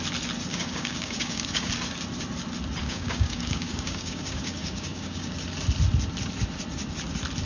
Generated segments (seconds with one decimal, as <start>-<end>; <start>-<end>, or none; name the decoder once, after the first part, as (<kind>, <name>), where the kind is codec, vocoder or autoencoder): 0.5-1.7 (codec, DAC); 2.8-5.3

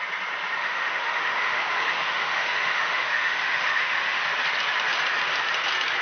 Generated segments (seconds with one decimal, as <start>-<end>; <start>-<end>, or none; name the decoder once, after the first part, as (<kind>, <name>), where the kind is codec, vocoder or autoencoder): 0.6-4.2 (autoencoder, DAC-VAE)

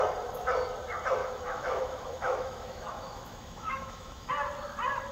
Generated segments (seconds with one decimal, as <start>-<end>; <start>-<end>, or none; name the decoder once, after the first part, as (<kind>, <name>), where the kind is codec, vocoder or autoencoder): 1.2-4.3 (autoencoder, DAC-VAE)